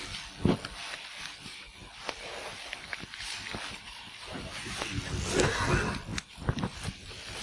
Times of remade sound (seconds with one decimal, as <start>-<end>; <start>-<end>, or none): 3.5-5.5; 6.1-6.9